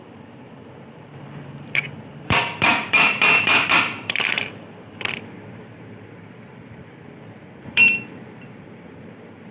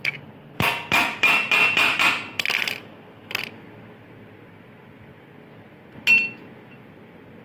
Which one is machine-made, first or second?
first